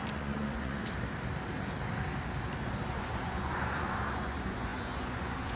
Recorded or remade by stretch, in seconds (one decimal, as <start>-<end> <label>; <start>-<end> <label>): 0.0-0.8 remade; 0.8-2.9 recorded; 2.9-5.6 remade

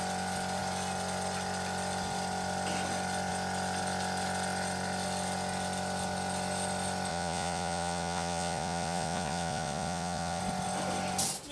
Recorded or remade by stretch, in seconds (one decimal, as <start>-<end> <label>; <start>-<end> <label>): 0.0-7.1 recorded; 7.1-10.4 remade; 10.4-11.5 recorded